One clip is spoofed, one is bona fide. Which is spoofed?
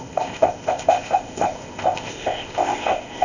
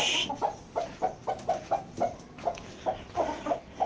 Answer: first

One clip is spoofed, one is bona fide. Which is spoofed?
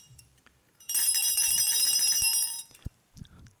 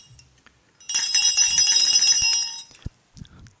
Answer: first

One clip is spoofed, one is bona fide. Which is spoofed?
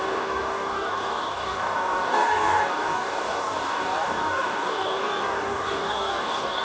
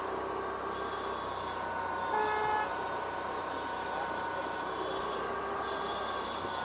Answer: first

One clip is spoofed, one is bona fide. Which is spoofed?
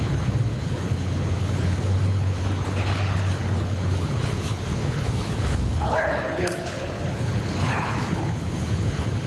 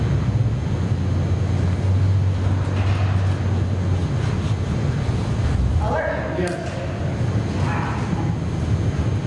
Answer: first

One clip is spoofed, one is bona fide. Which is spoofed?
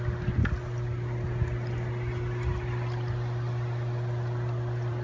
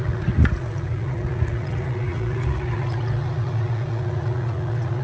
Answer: second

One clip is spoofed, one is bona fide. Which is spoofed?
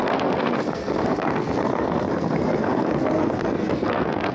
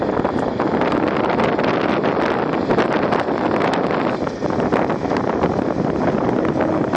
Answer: first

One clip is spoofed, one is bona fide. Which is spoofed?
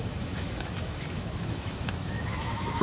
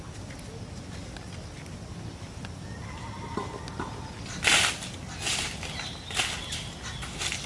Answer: first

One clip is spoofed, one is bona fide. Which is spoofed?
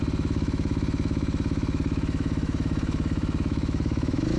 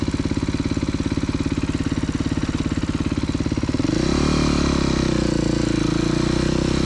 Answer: first